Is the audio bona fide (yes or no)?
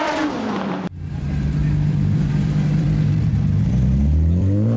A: no